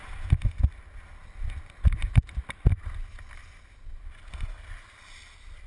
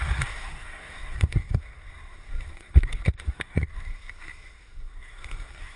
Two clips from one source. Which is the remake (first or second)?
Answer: second